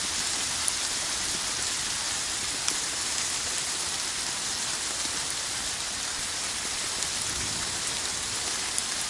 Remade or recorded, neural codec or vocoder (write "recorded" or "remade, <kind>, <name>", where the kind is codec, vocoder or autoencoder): recorded